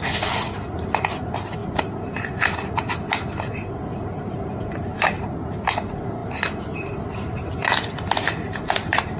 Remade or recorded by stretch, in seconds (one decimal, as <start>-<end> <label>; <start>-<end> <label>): 0.0-9.2 recorded